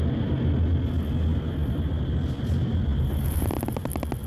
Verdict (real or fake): real